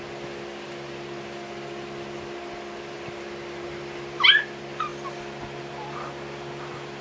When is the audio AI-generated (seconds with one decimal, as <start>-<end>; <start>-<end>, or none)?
none

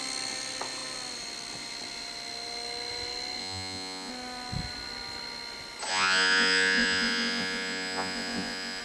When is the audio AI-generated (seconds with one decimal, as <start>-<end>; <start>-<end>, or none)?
3.4-4.1; 5.9-8.8

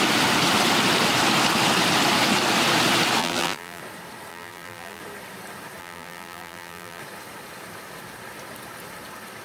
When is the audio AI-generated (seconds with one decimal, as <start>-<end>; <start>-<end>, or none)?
3.2-3.8; 4.3-5.0; 5.8-7.0

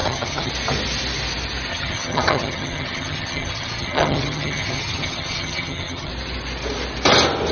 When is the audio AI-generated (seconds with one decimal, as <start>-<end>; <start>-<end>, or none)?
0.0-0.5; 1.7-6.1

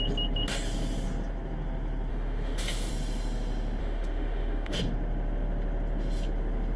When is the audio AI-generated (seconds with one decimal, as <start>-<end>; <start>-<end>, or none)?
2.1-2.9; 3.8-4.8

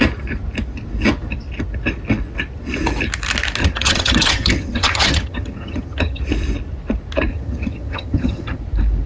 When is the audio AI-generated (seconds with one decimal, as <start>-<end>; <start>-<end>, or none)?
3.6-6.2; 7.3-8.6

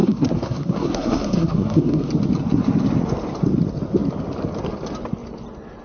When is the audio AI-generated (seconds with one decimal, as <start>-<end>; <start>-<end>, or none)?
0.0-2.1

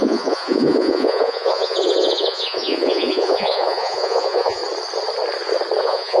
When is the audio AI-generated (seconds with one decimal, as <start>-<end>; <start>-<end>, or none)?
0.0-4.6; 5.8-6.2